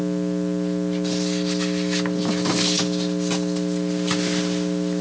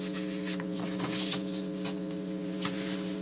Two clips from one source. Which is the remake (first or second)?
second